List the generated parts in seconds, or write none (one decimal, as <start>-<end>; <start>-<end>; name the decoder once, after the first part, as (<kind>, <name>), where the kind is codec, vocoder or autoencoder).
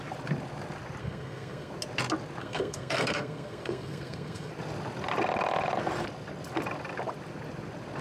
1.0-1.7 (codec, SNAC); 2.4-4.5